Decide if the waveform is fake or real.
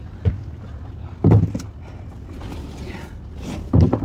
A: real